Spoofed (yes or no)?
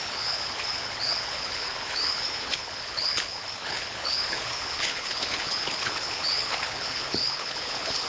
yes